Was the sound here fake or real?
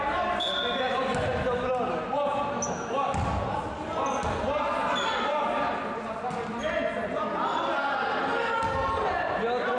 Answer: real